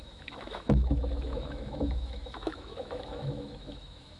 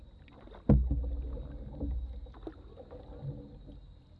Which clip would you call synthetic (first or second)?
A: first